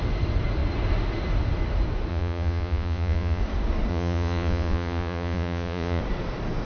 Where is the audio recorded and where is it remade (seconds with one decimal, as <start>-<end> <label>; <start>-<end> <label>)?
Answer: 0.0-2.1 recorded; 2.1-3.4 remade; 3.4-3.9 recorded; 3.9-6.0 remade; 6.0-6.6 recorded